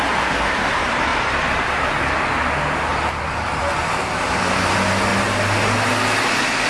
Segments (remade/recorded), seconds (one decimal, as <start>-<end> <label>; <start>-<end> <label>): 0.0-1.1 recorded; 1.1-2.2 remade; 2.2-2.9 recorded; 2.9-3.8 remade; 3.8-6.7 recorded

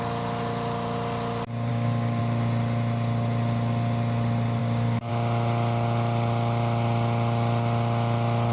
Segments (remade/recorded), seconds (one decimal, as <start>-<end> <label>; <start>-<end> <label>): 0.0-1.7 recorded; 1.7-2.2 remade; 2.2-4.6 recorded; 4.6-5.1 remade; 5.1-8.5 recorded

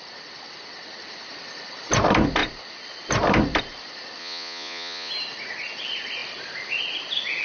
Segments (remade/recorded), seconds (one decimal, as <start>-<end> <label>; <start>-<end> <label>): 0.0-4.2 recorded; 4.2-5.1 remade; 5.1-7.4 recorded

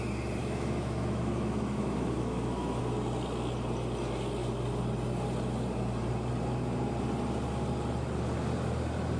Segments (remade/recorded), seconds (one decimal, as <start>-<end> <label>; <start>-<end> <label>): 0.0-0.4 recorded; 0.4-2.8 remade; 2.8-9.2 recorded